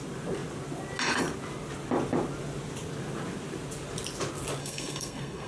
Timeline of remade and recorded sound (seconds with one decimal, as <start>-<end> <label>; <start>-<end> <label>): 0.0-4.6 recorded; 4.6-5.5 remade